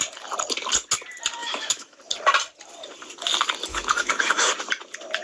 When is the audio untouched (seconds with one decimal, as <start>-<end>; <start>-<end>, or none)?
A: 0.0-1.4; 2.0-3.7; 4.5-5.2